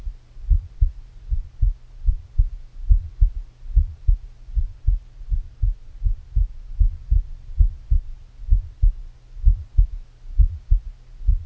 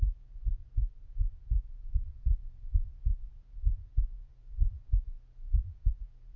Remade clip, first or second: second